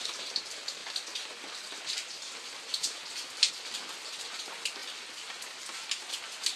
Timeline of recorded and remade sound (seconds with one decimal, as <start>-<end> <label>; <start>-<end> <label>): 0.0-6.6 recorded